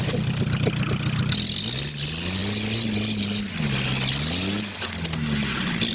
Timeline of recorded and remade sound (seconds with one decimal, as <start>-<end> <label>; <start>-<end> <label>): 0.0-5.9 recorded